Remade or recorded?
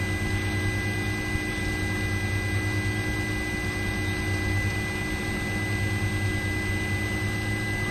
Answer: recorded